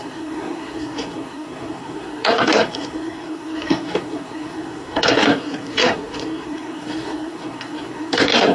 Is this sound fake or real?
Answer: fake